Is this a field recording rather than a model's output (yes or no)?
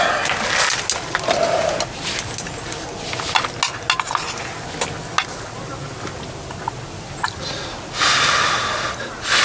yes